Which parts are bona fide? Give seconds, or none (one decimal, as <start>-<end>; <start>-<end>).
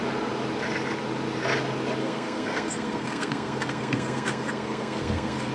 0.0-2.0